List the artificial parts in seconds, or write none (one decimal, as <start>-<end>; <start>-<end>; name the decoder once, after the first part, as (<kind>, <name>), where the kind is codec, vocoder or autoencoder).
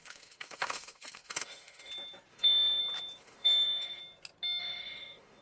0.0-1.9 (autoencoder, DAC-VAE); 2.3-2.8; 3.2-4.0; 4.6-5.4